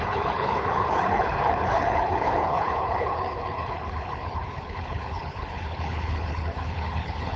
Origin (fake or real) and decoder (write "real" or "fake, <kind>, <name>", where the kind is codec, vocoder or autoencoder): fake, codec, HILCodec